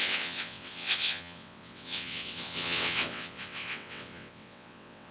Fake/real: fake